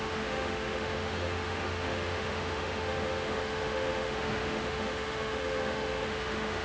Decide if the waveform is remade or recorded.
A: remade